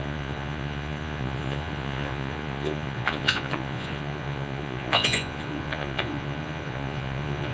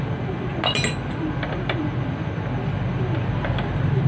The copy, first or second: first